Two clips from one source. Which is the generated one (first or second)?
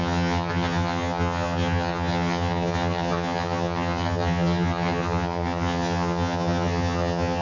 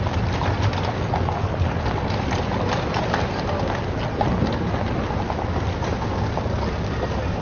first